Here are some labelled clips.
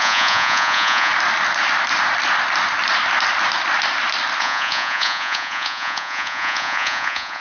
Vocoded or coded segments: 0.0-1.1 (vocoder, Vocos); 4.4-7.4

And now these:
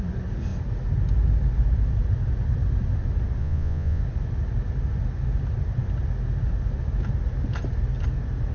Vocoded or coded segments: 3.4-4.0 (vocoder, Vocos)

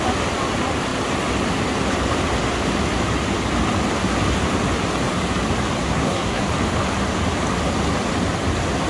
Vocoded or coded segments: 5.8-6.4 (codec, SNAC)